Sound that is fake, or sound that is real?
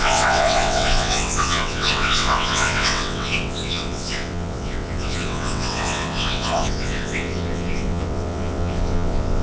fake